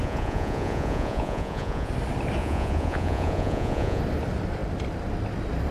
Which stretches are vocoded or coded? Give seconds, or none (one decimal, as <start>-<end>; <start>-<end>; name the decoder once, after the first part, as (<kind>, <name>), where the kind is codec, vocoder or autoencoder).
0.0-1.9 (vocoder, Vocos); 2.4-4.0